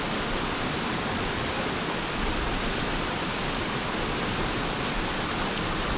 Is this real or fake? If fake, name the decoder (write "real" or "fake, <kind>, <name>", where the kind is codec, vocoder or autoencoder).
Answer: real